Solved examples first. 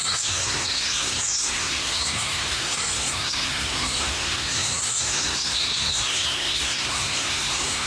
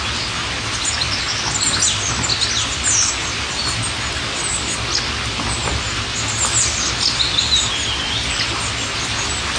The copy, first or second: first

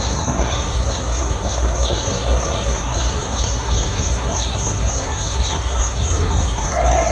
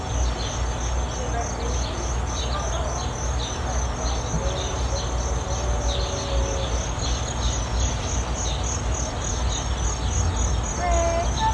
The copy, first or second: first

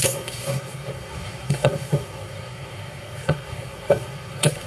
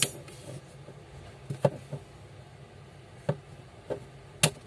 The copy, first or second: first